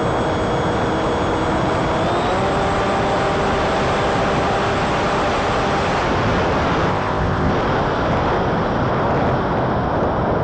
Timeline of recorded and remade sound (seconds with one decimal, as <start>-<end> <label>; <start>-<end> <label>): 0.0-6.9 recorded; 6.9-7.5 remade; 7.5-10.4 recorded